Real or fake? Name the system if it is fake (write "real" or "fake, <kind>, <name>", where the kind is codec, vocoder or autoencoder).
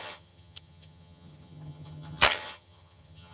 fake, vocoder, HiFi-GAN